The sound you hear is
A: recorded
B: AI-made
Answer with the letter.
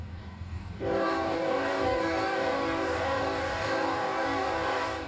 B